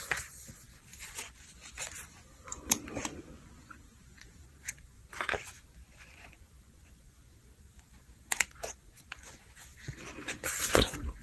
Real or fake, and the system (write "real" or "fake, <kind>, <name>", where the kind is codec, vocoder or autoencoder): fake, vocoder, Vocos